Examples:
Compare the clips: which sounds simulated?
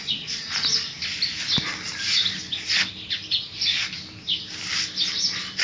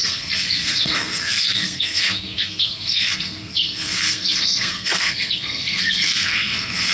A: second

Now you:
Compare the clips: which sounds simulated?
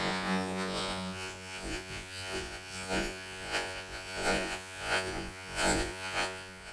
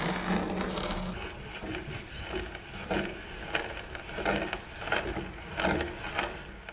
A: first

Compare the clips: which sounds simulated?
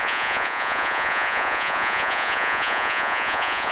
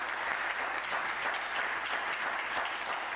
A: first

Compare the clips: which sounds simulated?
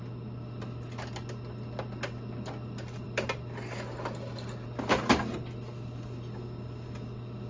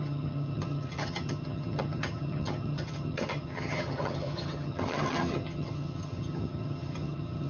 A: second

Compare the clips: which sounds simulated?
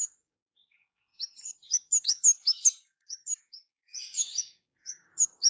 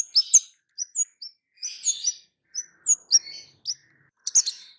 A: first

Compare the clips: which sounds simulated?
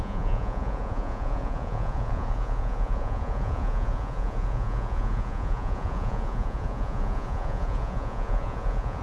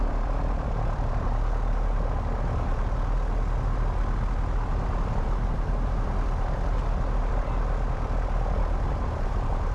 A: first